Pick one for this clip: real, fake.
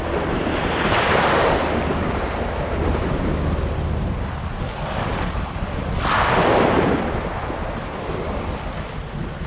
real